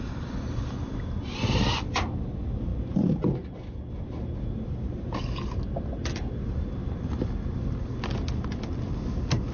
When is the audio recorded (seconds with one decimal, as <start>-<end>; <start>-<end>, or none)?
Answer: 0.0-9.5